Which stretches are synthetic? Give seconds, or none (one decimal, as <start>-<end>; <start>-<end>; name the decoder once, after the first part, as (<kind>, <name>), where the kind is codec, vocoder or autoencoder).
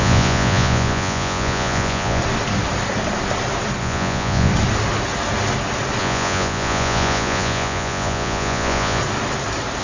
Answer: 0.0-2.2 (vocoder, Vocos); 3.8-4.5; 6.0-9.0